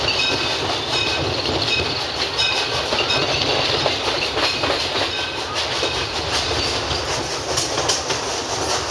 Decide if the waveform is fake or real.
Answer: real